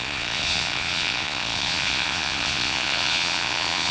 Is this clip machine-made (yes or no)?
yes